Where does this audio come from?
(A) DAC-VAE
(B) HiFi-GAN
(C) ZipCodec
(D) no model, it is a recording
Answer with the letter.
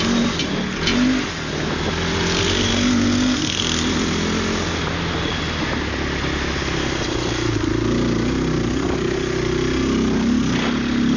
D